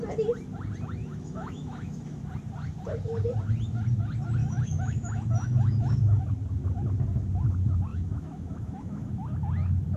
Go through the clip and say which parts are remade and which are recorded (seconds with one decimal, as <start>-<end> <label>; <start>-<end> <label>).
0.0-1.0 recorded; 1.0-2.2 remade; 2.2-4.4 recorded; 4.4-6.2 remade; 6.2-7.9 recorded; 7.9-9.1 remade; 9.1-10.0 recorded